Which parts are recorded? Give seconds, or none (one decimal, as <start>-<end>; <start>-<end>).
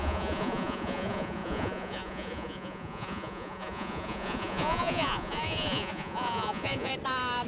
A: 6.9-7.5